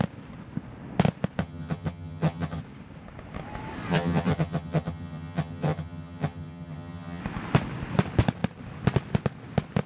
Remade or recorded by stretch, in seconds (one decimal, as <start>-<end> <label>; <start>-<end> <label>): 0.0-1.4 recorded; 1.4-2.6 remade; 2.6-3.9 recorded; 3.9-7.2 remade; 7.2-9.9 recorded

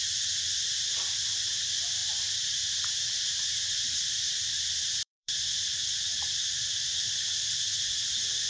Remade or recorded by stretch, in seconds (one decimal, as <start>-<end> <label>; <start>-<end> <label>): 0.0-8.5 remade

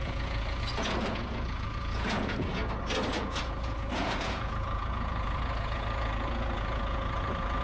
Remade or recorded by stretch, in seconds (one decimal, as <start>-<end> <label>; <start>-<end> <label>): 0.0-2.6 remade; 2.6-3.1 recorded; 3.1-7.6 remade

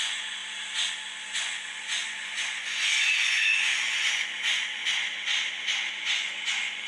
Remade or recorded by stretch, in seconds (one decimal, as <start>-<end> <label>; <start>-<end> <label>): 0.0-0.4 remade; 0.4-0.9 recorded; 0.9-4.8 remade; 4.8-5.9 recorded; 5.9-6.9 remade

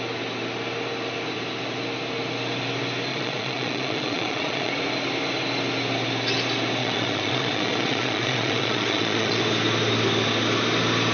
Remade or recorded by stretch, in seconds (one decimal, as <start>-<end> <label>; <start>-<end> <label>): 0.0-3.1 recorded; 3.1-4.7 remade; 4.7-6.8 recorded; 6.8-9.4 remade; 9.4-11.1 recorded

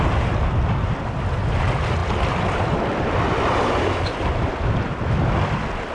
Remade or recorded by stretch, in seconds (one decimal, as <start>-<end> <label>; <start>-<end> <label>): 0.0-5.9 recorded

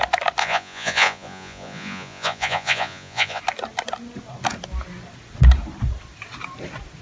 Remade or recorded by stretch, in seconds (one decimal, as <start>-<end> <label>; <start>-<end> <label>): 0.0-0.4 recorded; 0.4-3.4 remade; 3.4-7.0 recorded

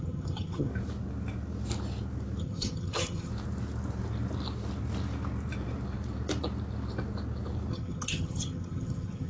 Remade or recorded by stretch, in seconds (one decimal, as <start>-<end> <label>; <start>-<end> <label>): 0.0-0.7 remade; 0.7-2.4 recorded; 2.4-3.3 remade; 3.3-7.7 recorded; 7.7-9.3 remade